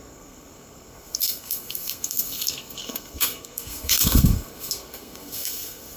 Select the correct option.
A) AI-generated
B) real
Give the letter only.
A